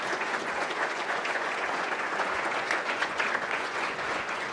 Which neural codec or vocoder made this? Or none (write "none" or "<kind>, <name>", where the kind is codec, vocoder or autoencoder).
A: vocoder, Vocos